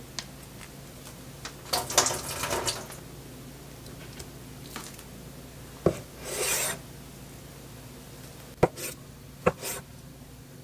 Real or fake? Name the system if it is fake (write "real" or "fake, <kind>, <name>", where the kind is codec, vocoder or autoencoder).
real